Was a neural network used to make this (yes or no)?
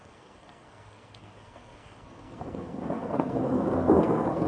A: yes